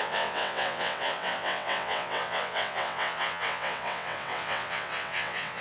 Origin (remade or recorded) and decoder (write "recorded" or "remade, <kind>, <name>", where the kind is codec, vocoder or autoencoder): remade, vocoder, WaveNeXt